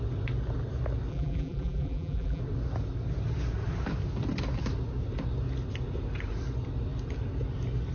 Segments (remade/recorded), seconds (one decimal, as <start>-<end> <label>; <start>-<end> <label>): 0.0-1.1 recorded; 1.1-2.4 remade; 2.4-7.9 recorded